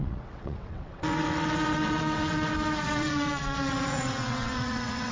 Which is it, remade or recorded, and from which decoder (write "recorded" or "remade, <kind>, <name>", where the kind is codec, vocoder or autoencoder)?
remade, vocoder, WaveNeXt